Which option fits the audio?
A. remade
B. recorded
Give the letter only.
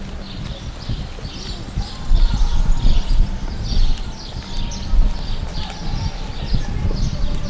B